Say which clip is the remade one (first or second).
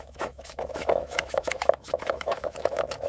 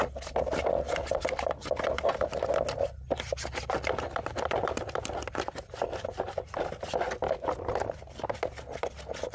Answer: first